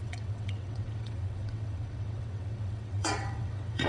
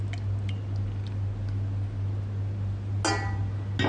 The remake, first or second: first